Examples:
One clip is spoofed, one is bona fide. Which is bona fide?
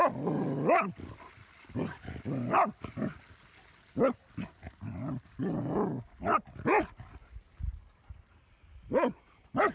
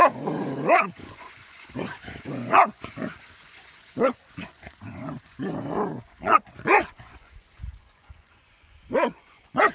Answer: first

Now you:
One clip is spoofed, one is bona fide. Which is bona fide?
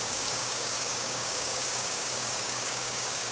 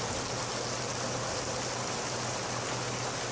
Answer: second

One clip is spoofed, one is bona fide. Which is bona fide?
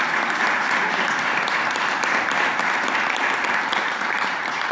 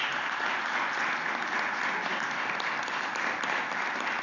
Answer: second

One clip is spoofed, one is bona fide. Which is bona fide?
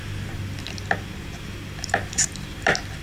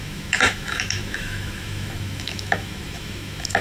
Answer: first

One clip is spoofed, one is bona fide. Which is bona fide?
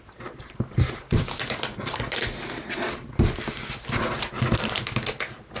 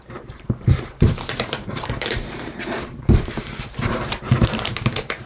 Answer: first